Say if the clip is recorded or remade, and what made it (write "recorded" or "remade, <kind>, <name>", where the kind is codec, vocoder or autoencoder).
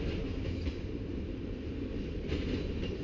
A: remade, vocoder, BigVGAN v2